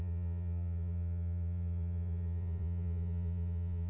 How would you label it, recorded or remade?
remade